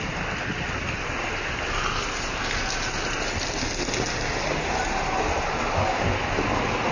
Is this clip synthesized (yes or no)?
no